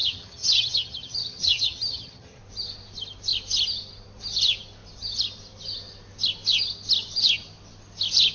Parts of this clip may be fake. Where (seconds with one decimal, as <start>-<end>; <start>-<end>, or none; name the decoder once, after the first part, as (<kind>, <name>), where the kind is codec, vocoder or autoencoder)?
0.0-2.4 (vocoder, HiFi-GAN)

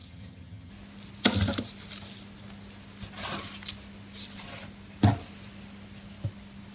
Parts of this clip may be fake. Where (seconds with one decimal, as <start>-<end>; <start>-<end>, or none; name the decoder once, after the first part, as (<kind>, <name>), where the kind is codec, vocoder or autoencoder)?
0.0-0.7 (vocoder, HiFi-GAN)

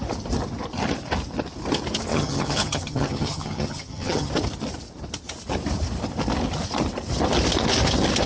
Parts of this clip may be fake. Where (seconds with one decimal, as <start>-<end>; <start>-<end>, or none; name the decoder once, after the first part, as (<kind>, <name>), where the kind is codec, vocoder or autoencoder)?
2.1-4.3 (vocoder, HiFi-GAN)

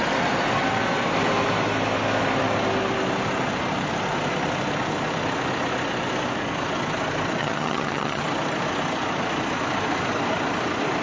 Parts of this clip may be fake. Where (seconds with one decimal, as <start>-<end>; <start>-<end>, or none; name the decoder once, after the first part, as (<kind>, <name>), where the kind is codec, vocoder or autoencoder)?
7.4-8.2 (vocoder, HiFi-GAN)

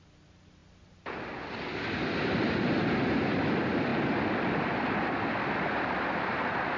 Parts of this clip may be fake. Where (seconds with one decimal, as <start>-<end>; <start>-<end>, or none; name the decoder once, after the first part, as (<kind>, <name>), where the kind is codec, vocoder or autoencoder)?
none

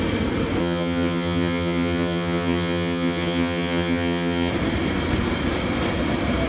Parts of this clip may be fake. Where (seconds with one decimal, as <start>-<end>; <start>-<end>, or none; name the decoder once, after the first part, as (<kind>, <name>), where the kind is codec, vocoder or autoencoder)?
0.6-4.5 (vocoder, HiFi-GAN)

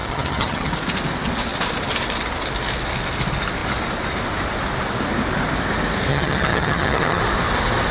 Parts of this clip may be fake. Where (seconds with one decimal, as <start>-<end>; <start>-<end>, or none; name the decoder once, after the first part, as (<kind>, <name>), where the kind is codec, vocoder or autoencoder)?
0.0-0.7 (vocoder, HiFi-GAN); 6.1-7.2

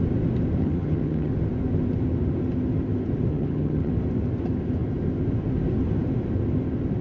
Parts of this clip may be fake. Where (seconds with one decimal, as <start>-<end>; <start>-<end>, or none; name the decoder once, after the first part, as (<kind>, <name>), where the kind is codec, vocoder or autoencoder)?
0.6-1.3 (vocoder, HiFi-GAN); 3.3-3.9